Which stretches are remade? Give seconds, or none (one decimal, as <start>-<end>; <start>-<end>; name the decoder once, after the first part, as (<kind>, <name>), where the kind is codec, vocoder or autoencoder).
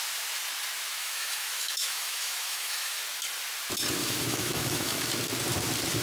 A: 1.0-3.0 (autoencoder, DAC-VAE); 4.0-5.1